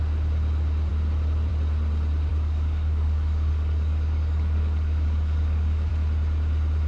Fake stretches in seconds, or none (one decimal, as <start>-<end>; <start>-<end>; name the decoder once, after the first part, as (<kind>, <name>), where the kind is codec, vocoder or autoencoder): 2.3-5.9 (codec, DAC)